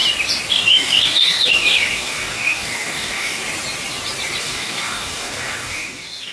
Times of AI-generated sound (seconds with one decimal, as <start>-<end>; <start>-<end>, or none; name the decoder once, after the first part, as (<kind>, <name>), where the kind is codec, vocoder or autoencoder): 0.5-3.4 (codec, DAC); 4.4-6.3